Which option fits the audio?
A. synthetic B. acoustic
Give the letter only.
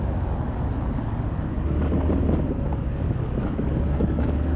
A